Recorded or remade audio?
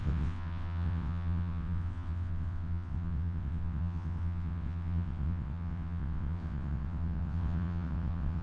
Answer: remade